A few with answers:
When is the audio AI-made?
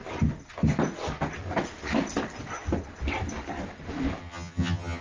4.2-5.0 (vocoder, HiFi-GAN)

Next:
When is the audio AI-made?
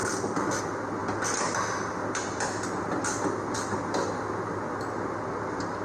0.0-0.6 (vocoder, BigVGAN v2); 1.0-4.5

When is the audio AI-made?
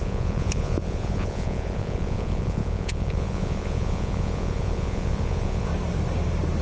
0.0-5.7 (vocoder, Vocos)